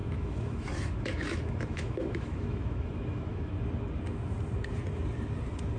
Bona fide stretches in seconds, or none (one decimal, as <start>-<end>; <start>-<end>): 3.5-5.8